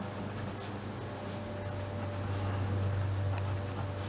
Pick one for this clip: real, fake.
real